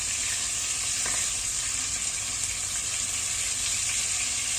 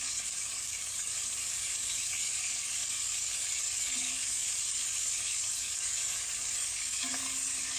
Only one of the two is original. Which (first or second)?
first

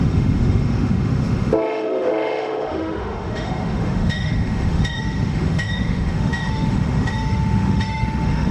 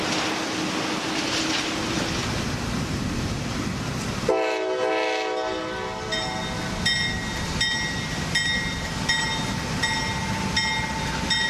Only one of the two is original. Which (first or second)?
second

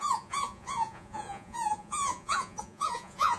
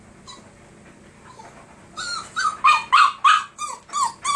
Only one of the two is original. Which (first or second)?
second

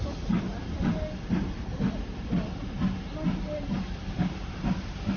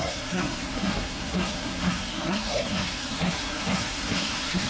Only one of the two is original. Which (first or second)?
first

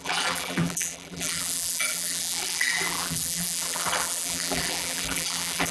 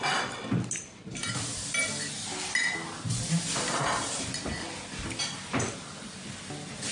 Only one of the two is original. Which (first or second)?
second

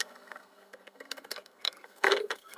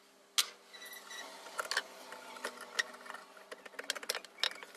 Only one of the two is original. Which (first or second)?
second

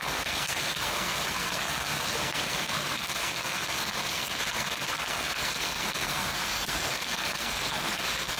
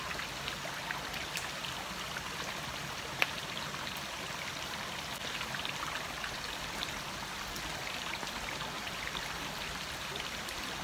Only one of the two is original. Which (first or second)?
second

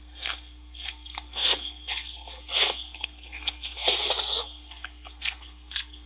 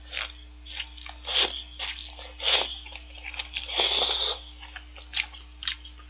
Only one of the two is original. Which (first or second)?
second